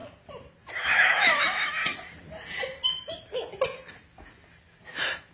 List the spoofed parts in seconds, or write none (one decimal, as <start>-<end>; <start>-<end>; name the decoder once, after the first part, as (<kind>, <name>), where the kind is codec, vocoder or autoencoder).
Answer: 0.8-1.8 (autoencoder, DAC-VAE)